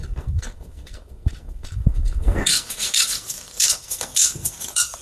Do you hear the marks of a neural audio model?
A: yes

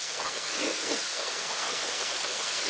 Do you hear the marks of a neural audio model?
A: yes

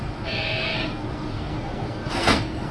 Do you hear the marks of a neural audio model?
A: yes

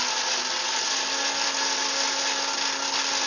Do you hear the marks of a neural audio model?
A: no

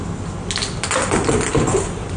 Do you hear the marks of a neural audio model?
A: no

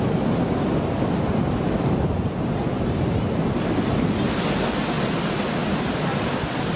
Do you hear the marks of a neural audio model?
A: no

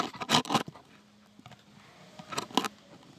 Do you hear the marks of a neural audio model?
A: no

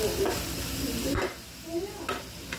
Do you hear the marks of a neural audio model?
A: no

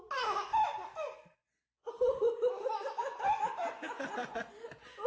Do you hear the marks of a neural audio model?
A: no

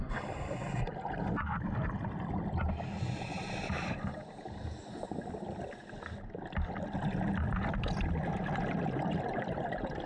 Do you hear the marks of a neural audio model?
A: no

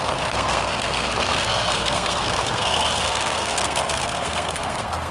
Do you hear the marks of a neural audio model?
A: yes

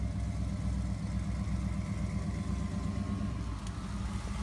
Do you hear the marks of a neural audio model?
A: no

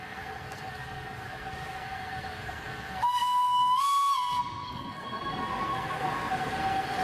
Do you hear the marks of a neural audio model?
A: yes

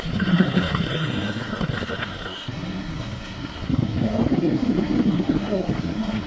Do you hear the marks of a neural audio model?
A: yes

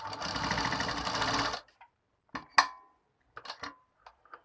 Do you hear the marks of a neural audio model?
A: no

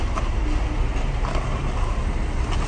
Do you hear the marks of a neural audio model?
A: no